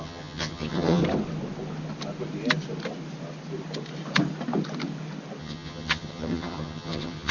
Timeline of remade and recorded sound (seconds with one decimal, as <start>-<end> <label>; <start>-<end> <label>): 0.0-1.0 remade; 1.0-5.4 recorded; 5.4-7.3 remade